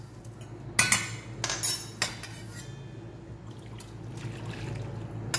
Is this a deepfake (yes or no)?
no